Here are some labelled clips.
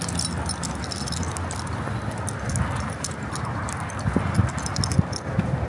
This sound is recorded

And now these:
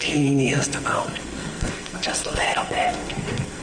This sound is remade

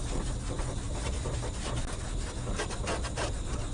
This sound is recorded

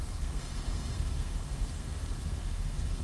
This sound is remade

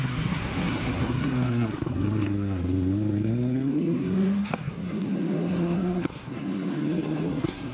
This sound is remade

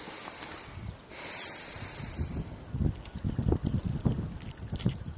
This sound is recorded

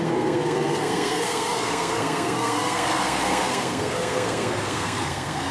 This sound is remade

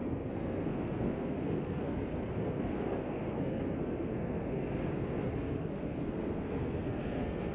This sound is remade